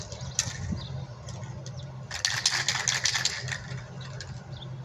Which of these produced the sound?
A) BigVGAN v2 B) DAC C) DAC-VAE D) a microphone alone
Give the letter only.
D